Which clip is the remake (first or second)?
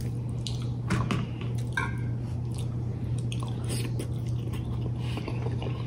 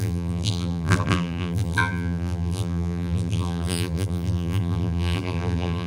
second